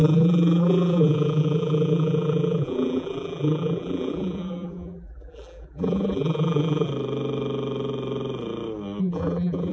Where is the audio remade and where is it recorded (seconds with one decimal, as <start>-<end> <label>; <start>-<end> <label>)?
0.0-6.9 remade; 6.9-9.0 recorded; 9.0-9.7 remade